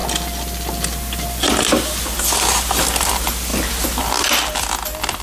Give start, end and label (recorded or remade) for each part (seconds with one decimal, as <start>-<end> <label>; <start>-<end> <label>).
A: 0.0-5.2 recorded